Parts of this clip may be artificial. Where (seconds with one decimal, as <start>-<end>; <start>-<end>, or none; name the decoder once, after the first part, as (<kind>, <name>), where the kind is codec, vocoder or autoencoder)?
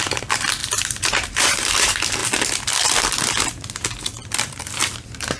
0.6-1.7 (vocoder, BigVGAN v2)